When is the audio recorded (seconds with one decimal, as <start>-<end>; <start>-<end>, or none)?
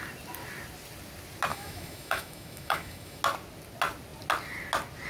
0.0-1.5; 3.2-5.1